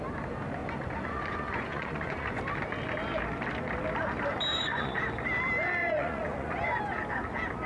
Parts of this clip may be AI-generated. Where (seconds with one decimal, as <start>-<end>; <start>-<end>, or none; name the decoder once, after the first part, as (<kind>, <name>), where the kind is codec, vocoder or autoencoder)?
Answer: 0.6-2.4 (vocoder, Vocos); 4.5-5.0; 5.8-6.8